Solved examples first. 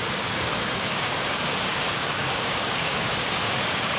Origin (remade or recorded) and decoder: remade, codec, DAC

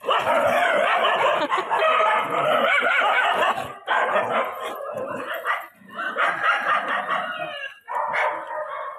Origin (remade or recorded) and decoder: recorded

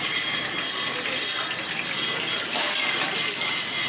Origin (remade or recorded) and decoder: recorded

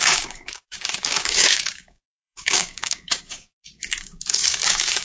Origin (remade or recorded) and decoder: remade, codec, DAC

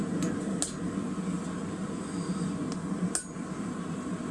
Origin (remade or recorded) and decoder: recorded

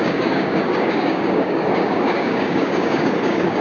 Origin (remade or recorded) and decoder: remade, codec, DAC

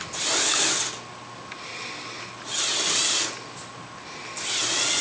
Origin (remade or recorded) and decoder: recorded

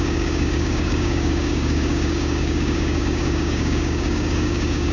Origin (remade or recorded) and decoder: remade, codec, DAC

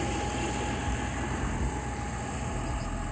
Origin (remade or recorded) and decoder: recorded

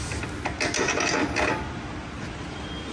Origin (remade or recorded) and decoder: recorded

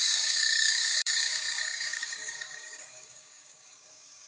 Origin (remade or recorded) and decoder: remade, codec, DAC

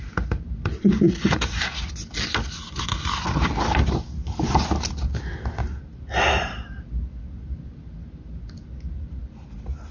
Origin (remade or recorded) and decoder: recorded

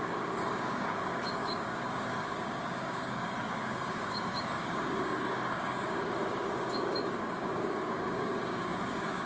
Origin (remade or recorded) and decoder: remade, codec, DAC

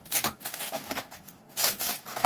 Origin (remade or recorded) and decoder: remade, codec, DAC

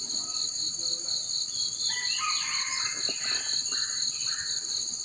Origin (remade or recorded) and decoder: recorded